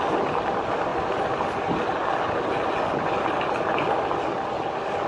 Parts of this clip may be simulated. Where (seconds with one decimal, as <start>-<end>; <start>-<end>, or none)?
none